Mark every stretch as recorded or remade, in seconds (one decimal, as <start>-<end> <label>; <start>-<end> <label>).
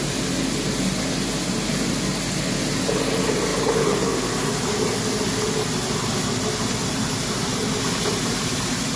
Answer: 0.0-6.8 recorded; 6.8-9.0 remade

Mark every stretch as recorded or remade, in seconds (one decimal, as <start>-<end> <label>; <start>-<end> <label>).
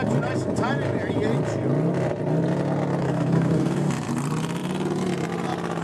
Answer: 0.0-3.0 recorded; 3.0-3.9 remade; 3.9-5.8 recorded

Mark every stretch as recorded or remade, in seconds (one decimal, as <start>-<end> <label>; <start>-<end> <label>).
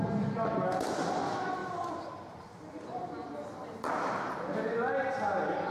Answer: 0.0-1.6 recorded; 1.6-2.8 remade; 2.8-3.6 recorded; 3.6-4.4 remade; 4.4-5.7 recorded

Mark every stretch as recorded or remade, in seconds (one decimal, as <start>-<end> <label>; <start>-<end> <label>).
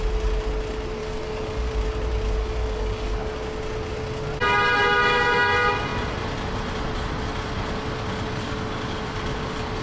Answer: 0.0-1.0 recorded; 1.0-1.7 remade; 1.7-2.4 recorded; 2.4-3.3 remade; 3.3-8.4 recorded; 8.4-9.0 remade; 9.0-9.8 recorded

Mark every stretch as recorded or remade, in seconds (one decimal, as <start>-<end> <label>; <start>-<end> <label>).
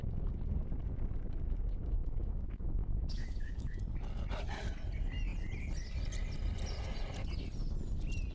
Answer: 0.0-2.0 recorded; 2.0-3.8 remade; 3.8-8.3 recorded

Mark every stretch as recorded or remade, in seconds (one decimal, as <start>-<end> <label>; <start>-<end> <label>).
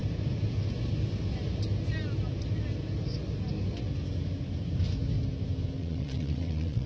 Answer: 0.0-5.8 recorded; 5.8-6.9 remade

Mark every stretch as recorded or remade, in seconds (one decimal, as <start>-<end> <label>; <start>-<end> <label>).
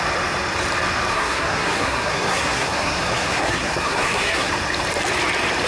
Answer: 0.0-1.1 recorded; 1.1-4.5 remade; 4.5-5.7 recorded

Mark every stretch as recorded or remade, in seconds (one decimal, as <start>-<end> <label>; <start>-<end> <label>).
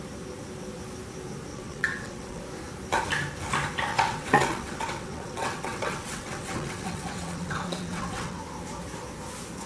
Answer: 0.0-1.5 recorded; 1.5-2.4 remade; 2.4-3.9 recorded; 3.9-8.4 remade; 8.4-9.7 recorded